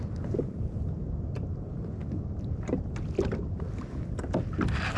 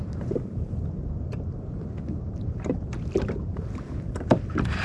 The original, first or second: first